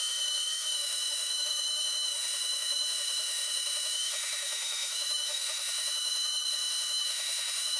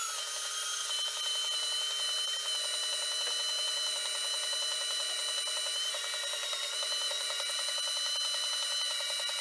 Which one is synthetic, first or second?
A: first